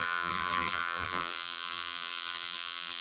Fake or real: fake